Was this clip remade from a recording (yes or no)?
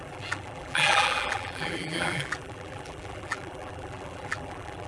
yes